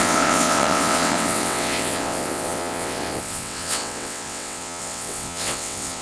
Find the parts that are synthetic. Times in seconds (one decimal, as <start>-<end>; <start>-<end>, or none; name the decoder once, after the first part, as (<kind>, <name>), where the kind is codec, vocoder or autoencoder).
0.0-6.0 (vocoder, WaveNeXt)